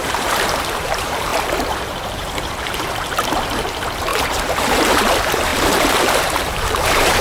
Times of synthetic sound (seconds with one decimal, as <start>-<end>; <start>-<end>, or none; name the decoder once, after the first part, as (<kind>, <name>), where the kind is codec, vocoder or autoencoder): 0.0-7.2 (vocoder, BigVGAN v2)